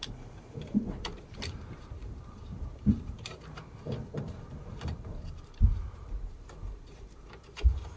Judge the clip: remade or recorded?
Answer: remade